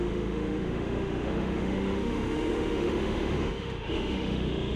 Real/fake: fake